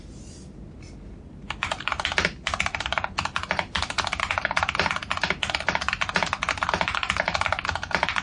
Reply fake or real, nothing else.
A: real